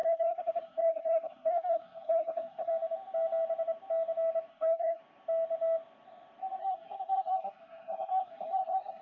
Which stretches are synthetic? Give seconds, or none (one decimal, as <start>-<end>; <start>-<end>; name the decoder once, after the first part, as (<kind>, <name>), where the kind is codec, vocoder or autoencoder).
0.0-2.7 (codec, SNAC); 4.5-5.0; 6.6-9.0

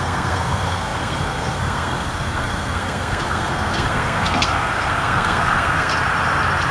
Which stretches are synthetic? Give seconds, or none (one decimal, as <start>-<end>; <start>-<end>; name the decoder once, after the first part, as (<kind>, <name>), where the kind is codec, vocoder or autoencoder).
0.0-5.9 (codec, SNAC)

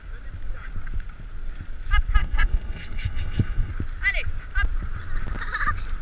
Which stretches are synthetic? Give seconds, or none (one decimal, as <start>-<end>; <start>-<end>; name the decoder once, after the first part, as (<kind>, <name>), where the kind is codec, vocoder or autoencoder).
2.2-3.7 (codec, SNAC)

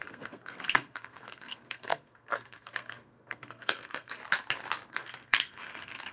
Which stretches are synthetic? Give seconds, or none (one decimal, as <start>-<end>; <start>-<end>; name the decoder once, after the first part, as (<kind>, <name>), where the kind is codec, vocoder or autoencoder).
0.0-4.2 (codec, SNAC); 4.9-6.1

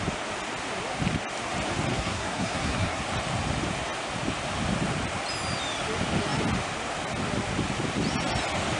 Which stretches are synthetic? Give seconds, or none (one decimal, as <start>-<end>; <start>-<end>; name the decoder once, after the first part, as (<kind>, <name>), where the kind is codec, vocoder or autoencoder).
1.9-3.0 (codec, SNAC)

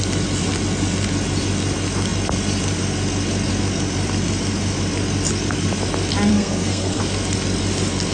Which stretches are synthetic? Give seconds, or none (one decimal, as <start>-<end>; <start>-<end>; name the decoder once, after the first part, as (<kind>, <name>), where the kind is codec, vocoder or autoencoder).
6.3-7.0 (codec, SNAC)

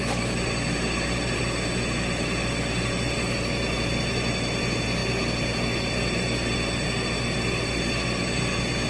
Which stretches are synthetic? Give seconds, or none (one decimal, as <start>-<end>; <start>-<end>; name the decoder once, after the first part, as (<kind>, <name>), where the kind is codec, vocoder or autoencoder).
none

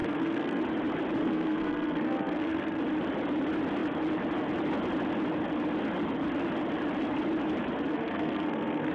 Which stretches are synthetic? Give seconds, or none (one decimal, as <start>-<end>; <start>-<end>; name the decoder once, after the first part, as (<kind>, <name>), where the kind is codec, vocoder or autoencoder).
0.0-0.6 (codec, SNAC); 1.2-2.8; 7.9-8.9